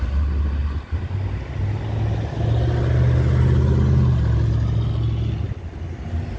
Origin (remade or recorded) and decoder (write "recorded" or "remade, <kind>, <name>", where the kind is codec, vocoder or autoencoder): recorded